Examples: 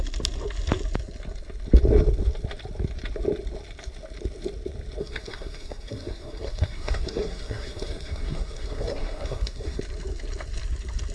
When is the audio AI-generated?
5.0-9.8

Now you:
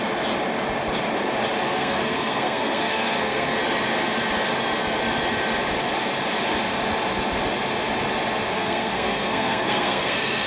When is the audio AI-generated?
1.7-3.6; 8.5-10.5

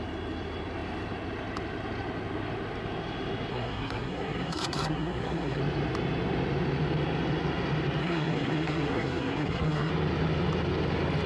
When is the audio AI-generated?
3.5-5.6; 8.0-9.9

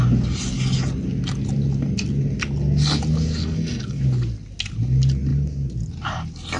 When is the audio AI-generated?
3.4-4.0

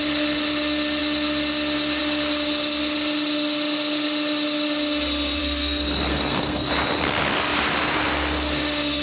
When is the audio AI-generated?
5.4-6.7